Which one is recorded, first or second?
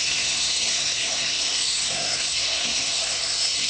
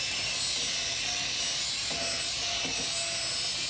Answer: second